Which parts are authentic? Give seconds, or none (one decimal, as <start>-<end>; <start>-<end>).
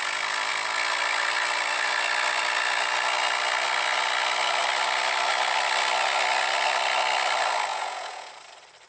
0.0-7.7; 8.3-8.9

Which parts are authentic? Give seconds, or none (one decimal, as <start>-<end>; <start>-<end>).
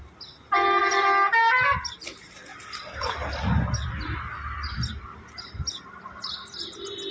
0.0-7.1